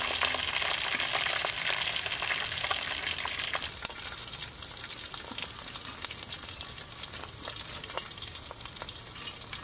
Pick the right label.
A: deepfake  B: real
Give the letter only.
B